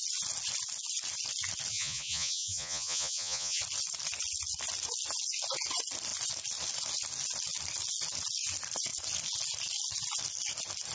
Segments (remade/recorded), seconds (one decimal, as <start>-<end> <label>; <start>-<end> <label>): 0.0-1.7 recorded; 1.7-3.6 remade; 3.6-10.9 recorded